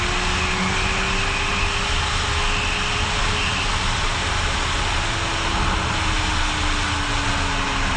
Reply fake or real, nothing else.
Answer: real